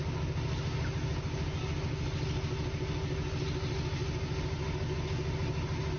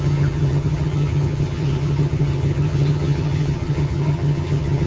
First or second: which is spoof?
second